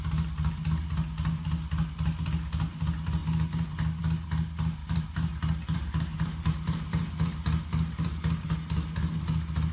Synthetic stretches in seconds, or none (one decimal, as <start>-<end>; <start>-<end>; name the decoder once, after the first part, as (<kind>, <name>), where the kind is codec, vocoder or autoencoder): 4.8-6.5 (vocoder, BigVGAN v2)